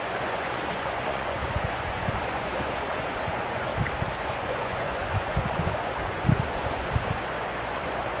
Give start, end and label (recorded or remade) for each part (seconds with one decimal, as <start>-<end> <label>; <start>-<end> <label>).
0.0-3.7 remade; 3.7-4.2 recorded; 4.2-8.2 remade